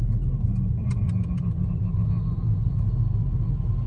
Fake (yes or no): no